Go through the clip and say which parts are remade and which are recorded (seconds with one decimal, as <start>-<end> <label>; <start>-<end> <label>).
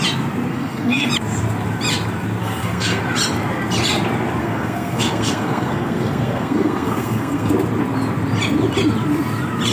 0.0-0.5 recorded; 0.5-1.1 remade; 1.1-2.4 recorded; 2.4-3.0 remade; 3.0-4.4 recorded; 4.4-7.5 remade; 7.5-9.7 recorded